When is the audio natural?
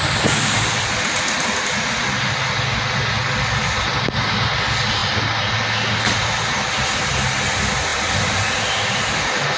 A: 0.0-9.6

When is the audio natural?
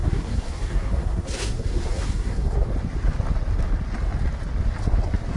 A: 2.7-5.4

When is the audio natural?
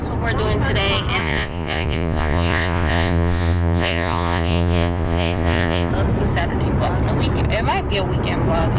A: 0.0-1.2; 5.9-8.8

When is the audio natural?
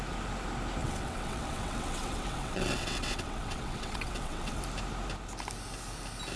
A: 0.0-0.8; 4.6-6.4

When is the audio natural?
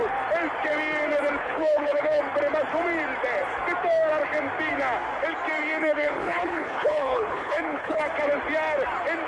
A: 0.0-1.4; 2.2-5.8; 8.0-9.3